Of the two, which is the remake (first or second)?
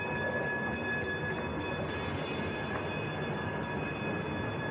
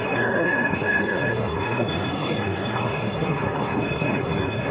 second